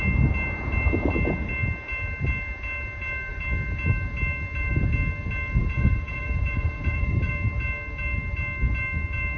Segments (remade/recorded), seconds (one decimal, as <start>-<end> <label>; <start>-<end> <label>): 0.0-5.6 recorded; 5.6-7.3 remade; 7.3-9.4 recorded